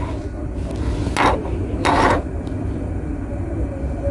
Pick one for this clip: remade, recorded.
recorded